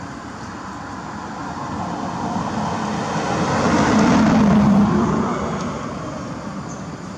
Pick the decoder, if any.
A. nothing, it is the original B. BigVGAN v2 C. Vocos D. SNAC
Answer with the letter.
A